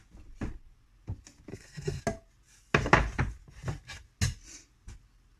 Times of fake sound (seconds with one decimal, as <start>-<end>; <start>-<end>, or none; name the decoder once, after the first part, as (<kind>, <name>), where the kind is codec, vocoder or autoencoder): 1.5-2.0 (codec, SNAC)